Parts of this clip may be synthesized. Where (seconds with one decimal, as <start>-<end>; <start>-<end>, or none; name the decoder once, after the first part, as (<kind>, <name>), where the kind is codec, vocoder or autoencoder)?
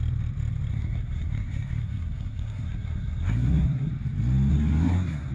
0.7-3.9 (codec, SNAC); 4.5-5.3